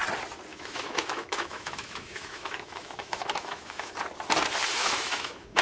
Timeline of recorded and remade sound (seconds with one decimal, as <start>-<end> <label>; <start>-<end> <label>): 0.0-0.5 recorded; 0.5-3.9 remade; 3.9-4.8 recorded; 4.8-5.6 remade